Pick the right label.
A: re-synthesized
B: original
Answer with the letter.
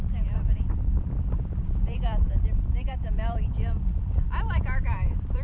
A